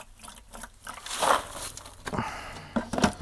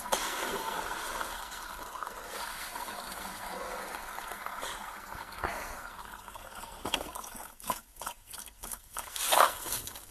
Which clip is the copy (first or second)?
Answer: second